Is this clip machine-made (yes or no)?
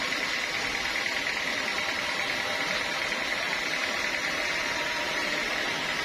no